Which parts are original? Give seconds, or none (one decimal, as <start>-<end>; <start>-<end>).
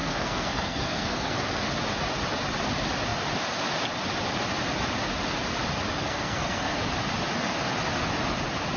1.7-6.0; 6.8-8.8